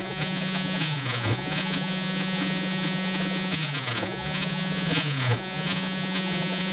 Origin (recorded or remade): remade